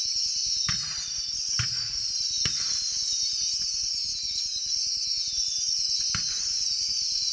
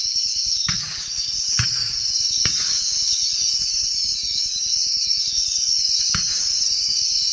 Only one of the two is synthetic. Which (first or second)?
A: second